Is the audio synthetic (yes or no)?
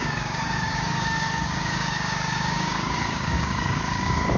yes